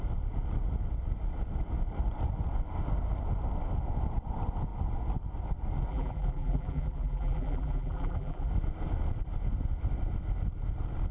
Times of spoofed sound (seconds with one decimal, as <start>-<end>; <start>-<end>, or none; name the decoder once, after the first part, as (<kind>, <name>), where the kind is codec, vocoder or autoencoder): 5.9-8.5 (vocoder, BigVGAN v2)